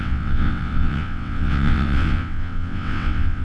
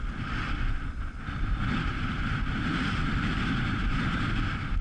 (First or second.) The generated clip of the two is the first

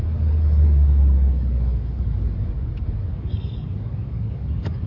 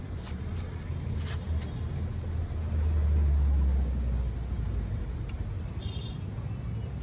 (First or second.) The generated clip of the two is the first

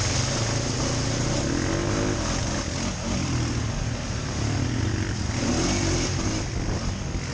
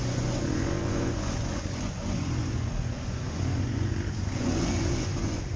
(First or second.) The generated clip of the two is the second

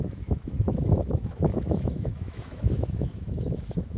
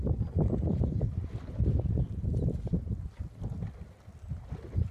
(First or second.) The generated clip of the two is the first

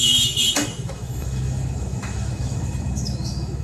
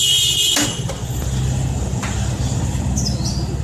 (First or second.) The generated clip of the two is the first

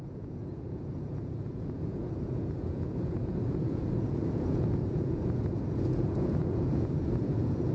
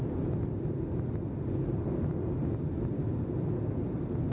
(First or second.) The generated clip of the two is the first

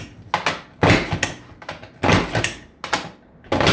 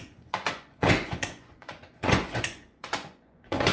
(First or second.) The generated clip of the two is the second